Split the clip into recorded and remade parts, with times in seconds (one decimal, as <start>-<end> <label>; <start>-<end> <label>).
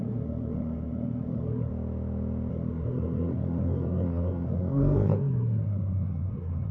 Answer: 0.0-1.7 remade; 1.7-2.5 recorded; 2.5-6.7 remade